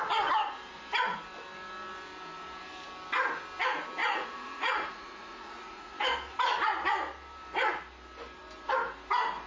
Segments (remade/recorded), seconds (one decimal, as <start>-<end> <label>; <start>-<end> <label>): 0.0-4.0 recorded; 4.0-6.0 remade; 6.0-9.5 recorded